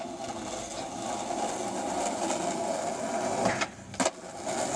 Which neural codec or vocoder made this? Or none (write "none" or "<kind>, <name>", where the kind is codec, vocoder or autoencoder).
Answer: none